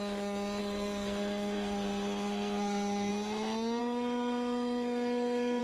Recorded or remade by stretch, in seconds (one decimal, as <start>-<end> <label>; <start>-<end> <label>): 0.0-0.6 recorded; 0.6-3.1 remade; 3.1-3.8 recorded; 3.8-5.6 remade